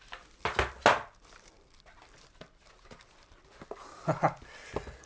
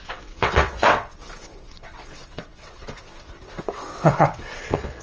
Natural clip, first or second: first